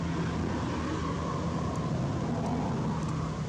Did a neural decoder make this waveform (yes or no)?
no